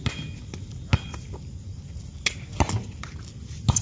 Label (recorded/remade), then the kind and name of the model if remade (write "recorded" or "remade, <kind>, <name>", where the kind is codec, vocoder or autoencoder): recorded